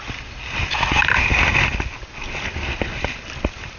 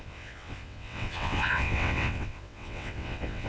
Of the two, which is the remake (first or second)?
second